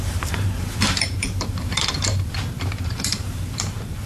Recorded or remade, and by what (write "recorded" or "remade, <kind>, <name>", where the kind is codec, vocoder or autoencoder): remade, vocoder, BigVGAN v2